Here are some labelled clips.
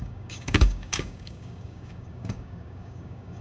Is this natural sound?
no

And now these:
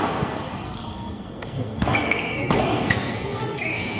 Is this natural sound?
no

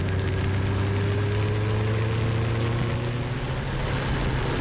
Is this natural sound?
yes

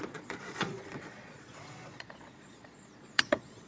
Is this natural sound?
no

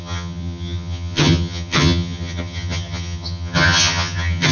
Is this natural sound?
no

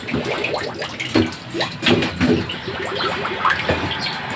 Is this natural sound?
yes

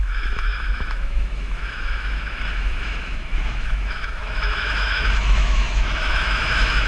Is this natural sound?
no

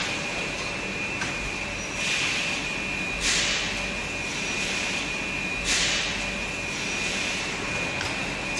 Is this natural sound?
yes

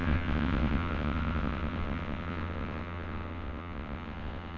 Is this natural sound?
no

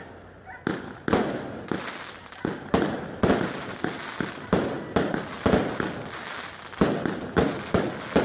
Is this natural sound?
yes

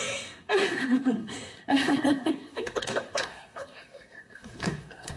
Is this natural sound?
no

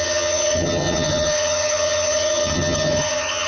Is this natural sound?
no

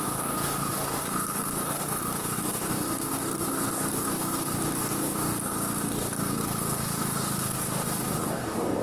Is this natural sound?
no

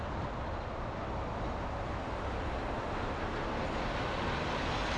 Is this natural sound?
yes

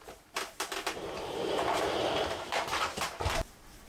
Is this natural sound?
no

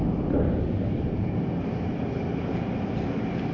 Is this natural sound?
yes